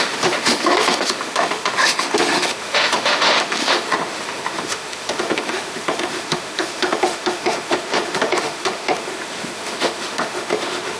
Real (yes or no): no